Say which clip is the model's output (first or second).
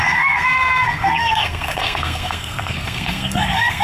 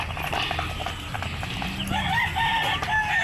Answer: first